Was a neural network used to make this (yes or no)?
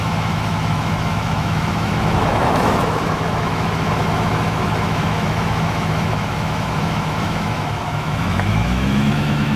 yes